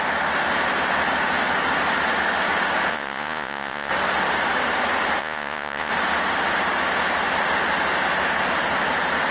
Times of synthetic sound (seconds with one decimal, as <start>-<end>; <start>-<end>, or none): 2.9-3.9; 5.2-5.9